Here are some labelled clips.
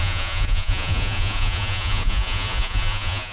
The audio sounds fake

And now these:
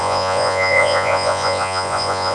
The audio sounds fake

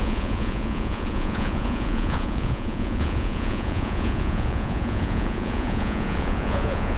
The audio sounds fake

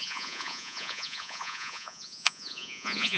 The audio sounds fake